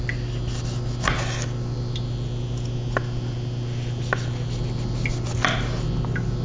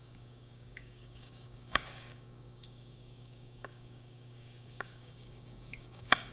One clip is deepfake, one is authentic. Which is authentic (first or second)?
first